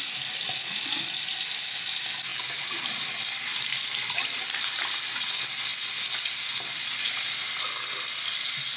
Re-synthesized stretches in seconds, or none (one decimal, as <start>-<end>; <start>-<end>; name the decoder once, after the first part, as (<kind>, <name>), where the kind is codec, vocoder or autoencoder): 2.3-2.9 (vocoder, BigVGAN v2); 4.2-4.8